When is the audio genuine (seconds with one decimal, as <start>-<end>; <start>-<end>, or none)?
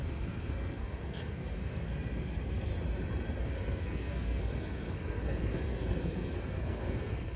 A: 2.7-3.4